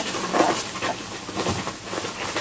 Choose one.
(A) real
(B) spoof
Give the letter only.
A